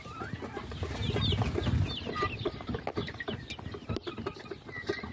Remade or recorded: recorded